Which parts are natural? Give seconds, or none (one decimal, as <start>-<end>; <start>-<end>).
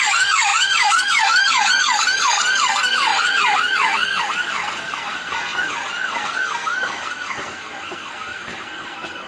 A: none